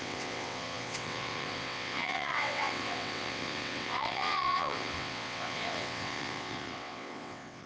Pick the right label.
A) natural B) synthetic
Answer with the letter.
B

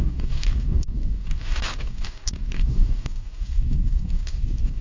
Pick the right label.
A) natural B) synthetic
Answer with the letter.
B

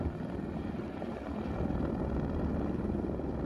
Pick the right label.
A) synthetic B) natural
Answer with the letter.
B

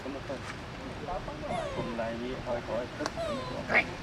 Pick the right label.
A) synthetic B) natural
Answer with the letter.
A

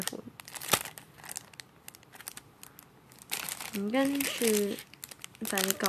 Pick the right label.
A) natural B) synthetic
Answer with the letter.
A